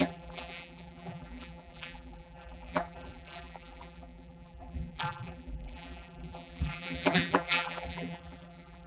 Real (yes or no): no